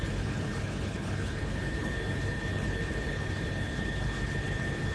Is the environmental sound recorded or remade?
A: remade